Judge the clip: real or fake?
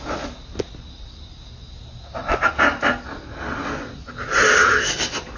real